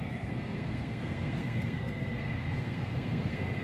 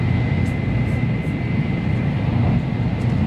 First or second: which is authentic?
second